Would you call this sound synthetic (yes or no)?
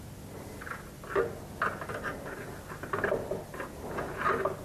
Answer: no